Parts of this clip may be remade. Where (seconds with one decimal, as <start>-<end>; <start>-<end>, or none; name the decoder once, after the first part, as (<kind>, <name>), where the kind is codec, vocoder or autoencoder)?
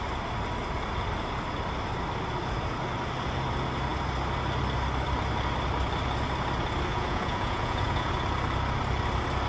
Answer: 6.9-8.1 (vocoder, Vocos)